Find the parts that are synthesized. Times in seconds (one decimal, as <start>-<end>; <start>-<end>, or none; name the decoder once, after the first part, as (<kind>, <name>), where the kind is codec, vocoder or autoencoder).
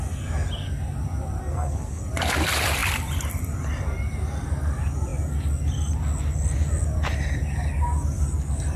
1.4-2.0 (codec, SNAC)